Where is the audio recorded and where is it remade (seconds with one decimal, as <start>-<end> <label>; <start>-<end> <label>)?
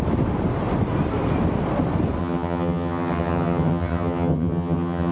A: 0.0-2.2 recorded; 2.2-5.1 remade